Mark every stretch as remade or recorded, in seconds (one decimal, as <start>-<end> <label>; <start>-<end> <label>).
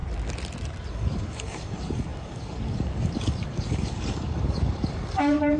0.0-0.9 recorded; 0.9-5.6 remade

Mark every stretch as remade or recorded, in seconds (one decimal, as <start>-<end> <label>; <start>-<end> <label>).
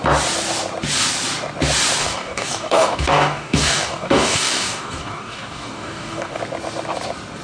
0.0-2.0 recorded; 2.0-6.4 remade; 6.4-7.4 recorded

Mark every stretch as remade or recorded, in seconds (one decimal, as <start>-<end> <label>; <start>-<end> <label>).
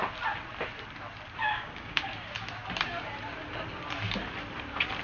0.0-1.4 recorded; 1.4-2.1 remade; 2.1-5.0 recorded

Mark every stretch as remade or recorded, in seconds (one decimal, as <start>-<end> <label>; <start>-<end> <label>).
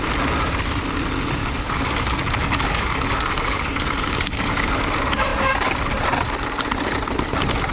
0.0-1.4 recorded; 1.4-4.8 remade; 4.8-7.7 recorded